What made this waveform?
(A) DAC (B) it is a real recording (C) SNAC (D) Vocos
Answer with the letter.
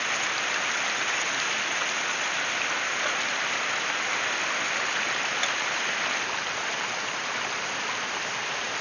B